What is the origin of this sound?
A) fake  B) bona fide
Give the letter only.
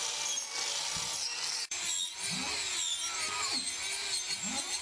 B